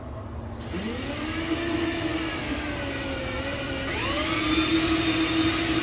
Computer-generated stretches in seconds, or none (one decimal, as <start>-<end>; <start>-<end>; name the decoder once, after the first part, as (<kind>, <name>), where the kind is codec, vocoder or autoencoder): 2.1-3.8 (vocoder, BigVGAN v2)